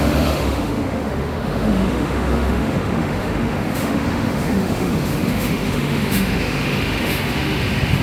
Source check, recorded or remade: remade